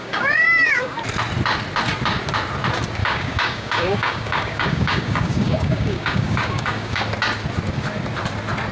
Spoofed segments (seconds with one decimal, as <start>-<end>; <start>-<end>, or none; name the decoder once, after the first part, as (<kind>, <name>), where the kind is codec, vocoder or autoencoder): 0.0-1.0 (codec, DAC); 3.0-7.0